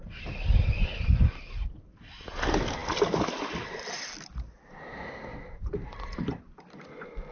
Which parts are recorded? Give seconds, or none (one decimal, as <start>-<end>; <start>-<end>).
0.0-7.3